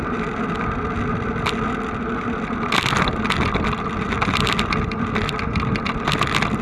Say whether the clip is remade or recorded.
recorded